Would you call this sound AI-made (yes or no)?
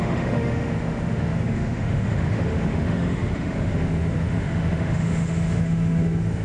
yes